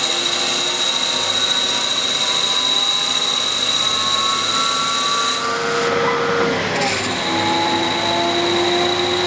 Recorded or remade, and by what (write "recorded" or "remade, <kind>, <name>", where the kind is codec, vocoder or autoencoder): recorded